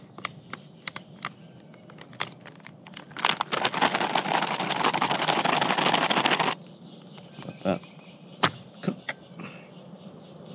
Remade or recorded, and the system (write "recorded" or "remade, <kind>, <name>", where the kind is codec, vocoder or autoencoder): recorded